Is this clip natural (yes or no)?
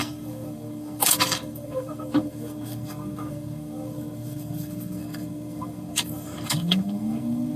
no